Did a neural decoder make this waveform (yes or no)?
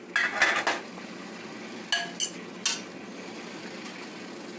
no